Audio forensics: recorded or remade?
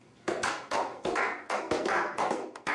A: remade